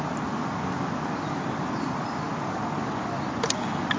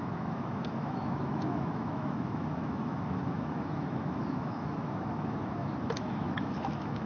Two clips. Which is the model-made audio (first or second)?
second